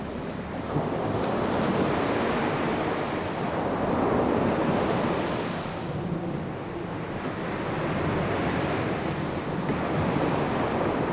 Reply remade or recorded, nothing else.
recorded